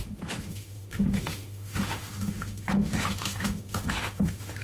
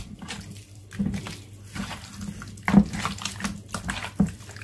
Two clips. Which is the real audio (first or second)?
second